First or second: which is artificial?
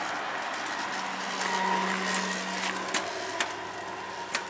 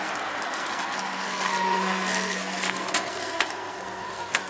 second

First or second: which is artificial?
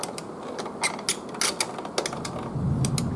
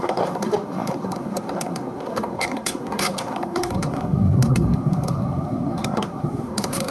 second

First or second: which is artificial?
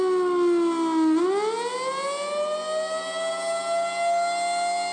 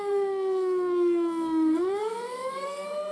second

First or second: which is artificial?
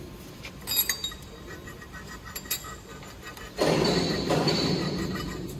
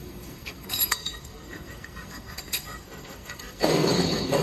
second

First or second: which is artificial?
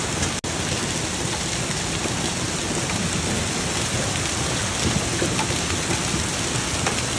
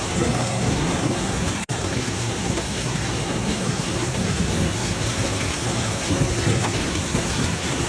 second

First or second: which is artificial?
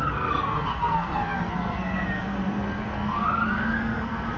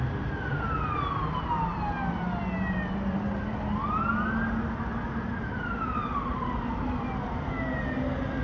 first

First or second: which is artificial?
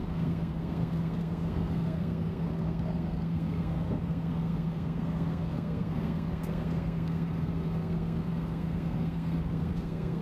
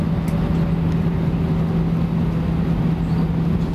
first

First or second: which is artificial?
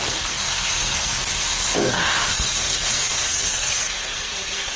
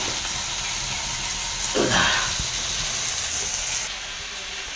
first